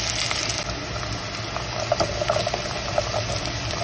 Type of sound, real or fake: real